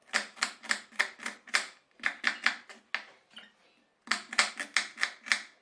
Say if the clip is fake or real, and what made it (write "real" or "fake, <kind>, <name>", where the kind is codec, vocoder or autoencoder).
real